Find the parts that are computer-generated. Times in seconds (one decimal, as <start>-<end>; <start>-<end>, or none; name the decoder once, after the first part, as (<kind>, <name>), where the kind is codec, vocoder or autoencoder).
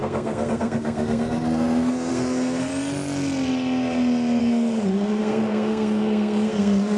0.0-2.7 (codec, SNAC); 4.4-7.0